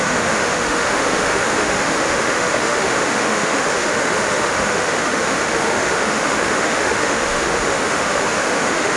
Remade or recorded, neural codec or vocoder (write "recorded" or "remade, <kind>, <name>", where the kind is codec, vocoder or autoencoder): remade, autoencoder, DAC-VAE